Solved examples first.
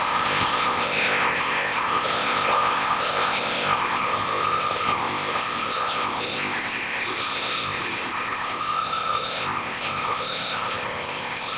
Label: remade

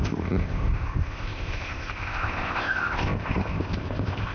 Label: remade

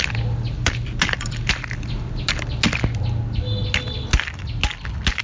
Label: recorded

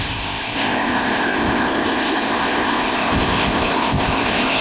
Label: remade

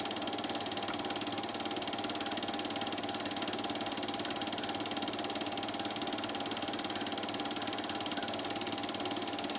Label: recorded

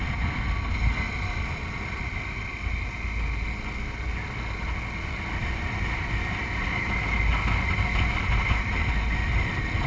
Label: recorded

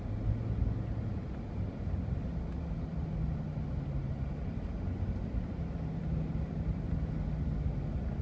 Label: recorded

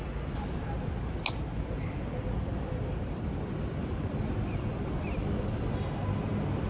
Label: recorded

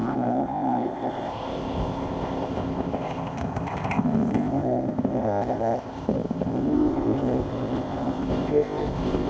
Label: remade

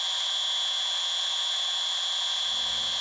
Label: recorded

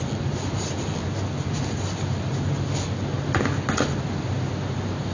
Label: recorded